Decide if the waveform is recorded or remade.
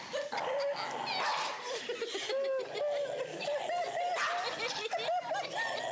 recorded